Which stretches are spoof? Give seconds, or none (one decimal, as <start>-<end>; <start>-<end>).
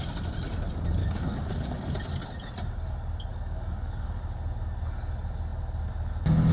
1.0-2.0; 3.3-4.2